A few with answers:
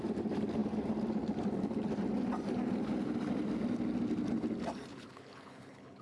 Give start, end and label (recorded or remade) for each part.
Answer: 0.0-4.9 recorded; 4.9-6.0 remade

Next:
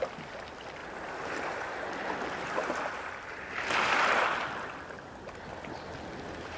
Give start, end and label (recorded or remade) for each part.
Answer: 0.0-6.6 recorded